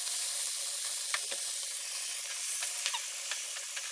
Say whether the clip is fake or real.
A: real